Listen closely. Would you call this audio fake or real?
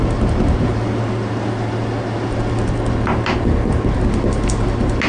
real